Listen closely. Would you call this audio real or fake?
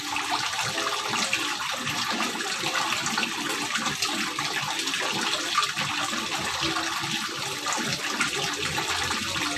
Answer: real